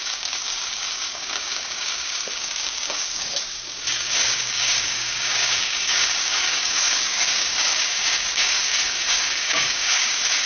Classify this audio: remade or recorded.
remade